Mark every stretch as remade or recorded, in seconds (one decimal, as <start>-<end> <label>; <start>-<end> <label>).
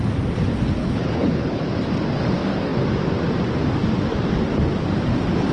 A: 0.0-0.8 recorded; 0.8-1.6 remade; 1.6-5.5 recorded